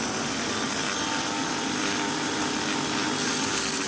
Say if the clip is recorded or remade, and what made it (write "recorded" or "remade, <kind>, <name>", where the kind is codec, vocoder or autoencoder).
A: recorded